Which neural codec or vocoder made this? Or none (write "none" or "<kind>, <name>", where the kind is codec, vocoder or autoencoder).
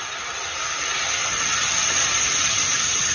none